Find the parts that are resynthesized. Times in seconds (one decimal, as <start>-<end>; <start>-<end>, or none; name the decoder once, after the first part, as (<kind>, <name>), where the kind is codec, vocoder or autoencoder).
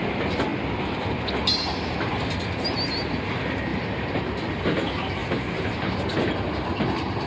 3.7-4.2 (vocoder, BigVGAN v2); 5.2-5.9